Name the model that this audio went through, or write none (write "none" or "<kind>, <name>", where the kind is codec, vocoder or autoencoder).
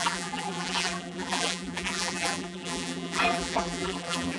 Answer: vocoder, BigVGAN v2